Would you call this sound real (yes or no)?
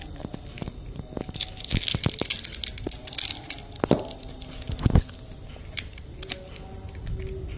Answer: yes